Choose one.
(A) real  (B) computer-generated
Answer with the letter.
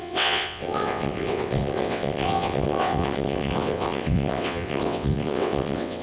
B